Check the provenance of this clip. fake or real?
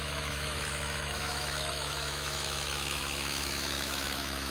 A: fake